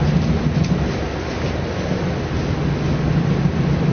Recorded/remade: recorded